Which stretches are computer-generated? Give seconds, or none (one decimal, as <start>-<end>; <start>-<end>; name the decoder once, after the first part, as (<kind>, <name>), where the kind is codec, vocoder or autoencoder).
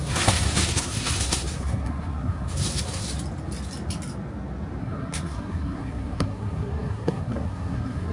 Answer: 0.0-3.1 (codec, SNAC); 4.8-8.1